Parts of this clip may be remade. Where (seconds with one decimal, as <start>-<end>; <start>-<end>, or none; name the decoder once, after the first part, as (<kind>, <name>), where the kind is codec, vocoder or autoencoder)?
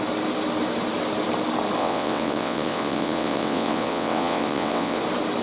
1.8-5.0 (vocoder, WaveNeXt)